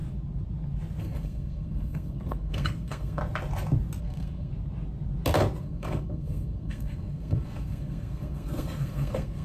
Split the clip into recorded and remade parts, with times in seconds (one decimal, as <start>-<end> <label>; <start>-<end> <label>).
0.0-1.0 recorded; 1.0-3.2 remade; 3.2-4.0 recorded; 4.0-4.5 remade; 4.5-5.6 recorded; 5.6-9.4 remade